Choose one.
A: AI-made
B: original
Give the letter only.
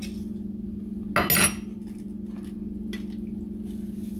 B